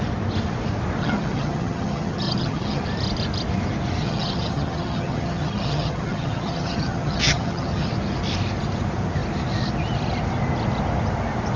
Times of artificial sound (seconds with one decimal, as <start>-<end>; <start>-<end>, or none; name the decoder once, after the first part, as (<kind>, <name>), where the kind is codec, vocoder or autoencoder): 1.0-2.8 (vocoder, HiFi-GAN); 4.0-7.9